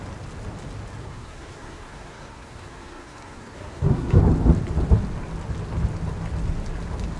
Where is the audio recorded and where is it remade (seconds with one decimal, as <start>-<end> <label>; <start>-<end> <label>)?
0.0-1.0 recorded; 1.0-4.2 remade; 4.2-7.2 recorded